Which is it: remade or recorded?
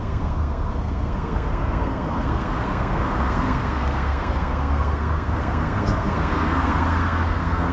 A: remade